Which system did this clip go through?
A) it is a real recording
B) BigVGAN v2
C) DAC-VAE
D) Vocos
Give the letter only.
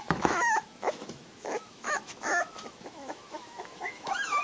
C